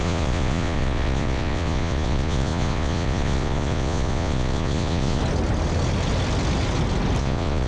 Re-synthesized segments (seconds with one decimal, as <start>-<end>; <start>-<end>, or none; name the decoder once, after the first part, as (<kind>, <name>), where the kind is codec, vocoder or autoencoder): 0.0-5.2 (vocoder, Vocos); 7.2-7.7